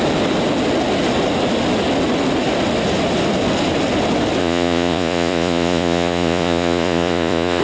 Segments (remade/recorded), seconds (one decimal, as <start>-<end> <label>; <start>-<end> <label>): 0.0-4.4 recorded; 4.4-7.6 remade